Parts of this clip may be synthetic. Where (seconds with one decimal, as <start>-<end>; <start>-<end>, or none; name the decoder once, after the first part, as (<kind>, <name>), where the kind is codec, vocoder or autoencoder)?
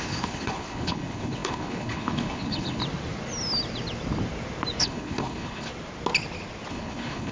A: 0.0-2.8 (codec, HILCodec); 4.8-5.7; 6.7-7.3